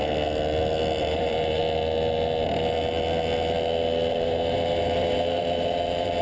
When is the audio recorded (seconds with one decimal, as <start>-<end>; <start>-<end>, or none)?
0.0-1.0; 1.6-4.1